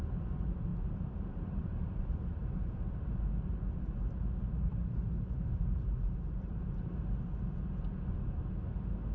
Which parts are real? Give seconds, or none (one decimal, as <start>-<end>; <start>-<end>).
0.0-0.7; 3.3-4.4; 7.0-9.1